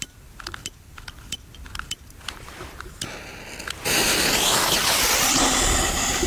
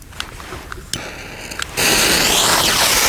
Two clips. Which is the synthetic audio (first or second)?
first